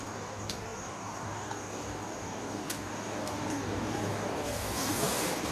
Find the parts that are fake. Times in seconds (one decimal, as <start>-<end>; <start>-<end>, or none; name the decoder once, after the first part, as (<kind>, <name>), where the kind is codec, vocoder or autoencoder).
0.0-5.5 (codec, DAC)